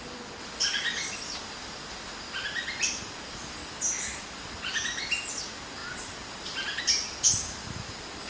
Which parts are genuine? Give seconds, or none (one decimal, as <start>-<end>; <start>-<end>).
0.0-8.3